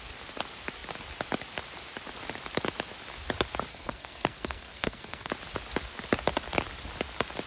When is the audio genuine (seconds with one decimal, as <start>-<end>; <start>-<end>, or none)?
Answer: 0.0-3.7; 5.3-7.5